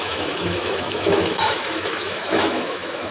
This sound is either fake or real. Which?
fake